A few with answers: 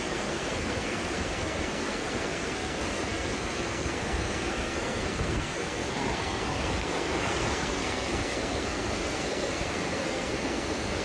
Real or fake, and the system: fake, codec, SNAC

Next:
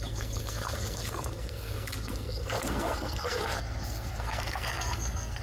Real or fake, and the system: fake, codec, SNAC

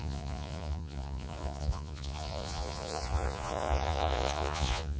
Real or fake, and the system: fake, vocoder, Vocos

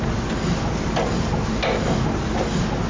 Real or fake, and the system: real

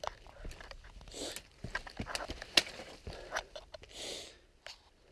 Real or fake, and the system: real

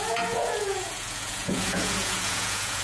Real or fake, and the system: fake, vocoder, Vocos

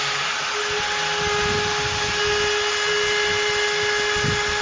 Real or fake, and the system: real